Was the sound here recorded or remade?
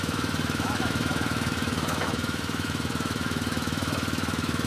remade